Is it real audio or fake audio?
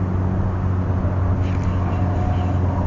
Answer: real